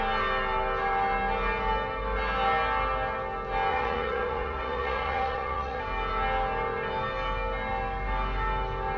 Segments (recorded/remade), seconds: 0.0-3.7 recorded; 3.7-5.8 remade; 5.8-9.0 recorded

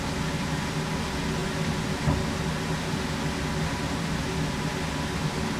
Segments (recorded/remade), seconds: 0.0-5.6 recorded

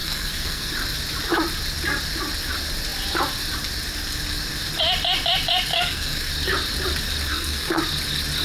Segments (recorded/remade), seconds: 0.0-0.7 remade; 0.7-5.7 recorded; 5.7-6.3 remade; 6.3-7.3 recorded; 7.3-7.8 remade; 7.8-8.4 recorded